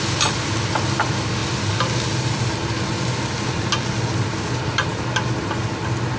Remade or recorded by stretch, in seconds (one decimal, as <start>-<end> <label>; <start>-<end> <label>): 0.0-6.2 recorded